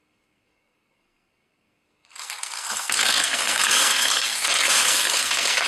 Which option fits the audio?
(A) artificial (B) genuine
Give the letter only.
A